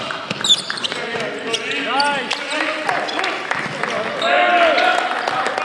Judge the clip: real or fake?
real